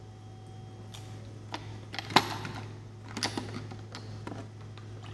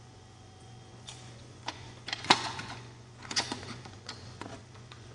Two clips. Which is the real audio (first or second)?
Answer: first